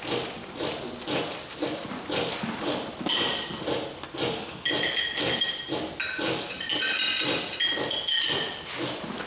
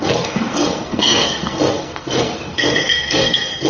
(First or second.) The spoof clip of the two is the second